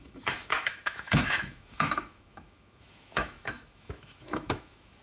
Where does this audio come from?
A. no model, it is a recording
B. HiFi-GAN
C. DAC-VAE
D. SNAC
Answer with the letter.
C